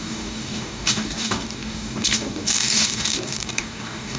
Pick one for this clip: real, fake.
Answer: fake